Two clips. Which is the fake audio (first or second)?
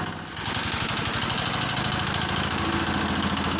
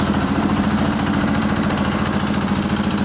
second